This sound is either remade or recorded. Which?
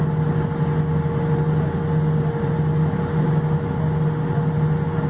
recorded